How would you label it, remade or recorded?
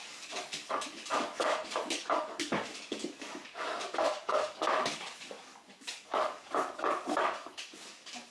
remade